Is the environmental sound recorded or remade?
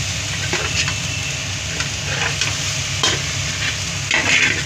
recorded